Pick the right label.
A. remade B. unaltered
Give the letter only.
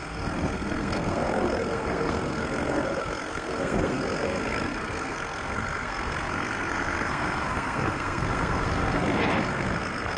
A